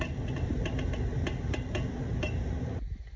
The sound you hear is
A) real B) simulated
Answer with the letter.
A